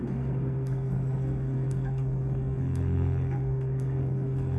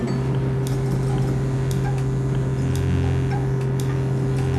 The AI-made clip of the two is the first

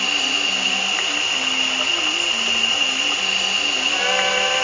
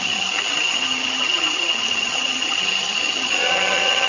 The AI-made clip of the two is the second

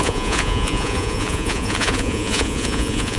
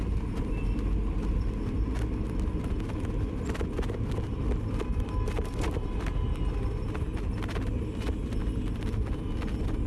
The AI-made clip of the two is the first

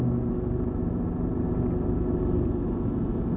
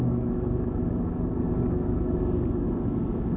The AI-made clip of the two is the second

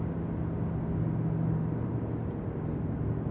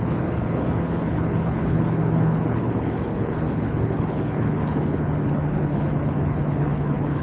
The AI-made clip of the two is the second